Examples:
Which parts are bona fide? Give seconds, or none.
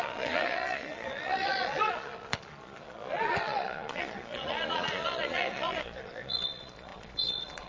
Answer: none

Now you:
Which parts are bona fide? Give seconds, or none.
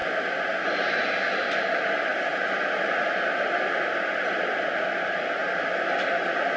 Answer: 0.0-6.6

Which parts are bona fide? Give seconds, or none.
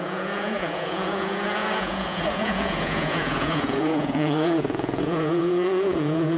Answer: none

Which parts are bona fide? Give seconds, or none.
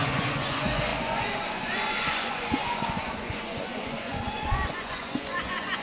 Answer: none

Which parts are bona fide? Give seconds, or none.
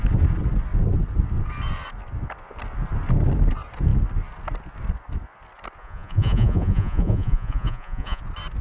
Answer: 0.0-5.8; 8.2-8.6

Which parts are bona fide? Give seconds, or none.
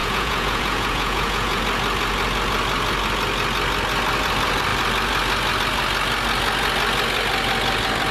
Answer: 1.6-8.1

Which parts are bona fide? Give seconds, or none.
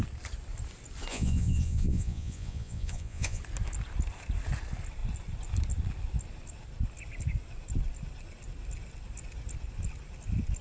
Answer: 0.0-1.1; 3.4-10.6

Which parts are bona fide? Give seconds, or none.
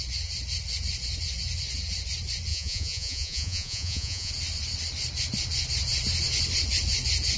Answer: 0.0-2.5; 4.3-7.4